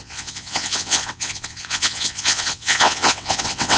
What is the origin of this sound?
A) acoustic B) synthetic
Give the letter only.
B